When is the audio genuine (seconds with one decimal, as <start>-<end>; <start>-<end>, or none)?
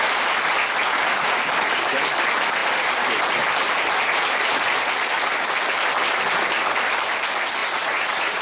0.0-7.6